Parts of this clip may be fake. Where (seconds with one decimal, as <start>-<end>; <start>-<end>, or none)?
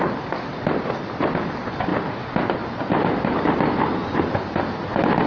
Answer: none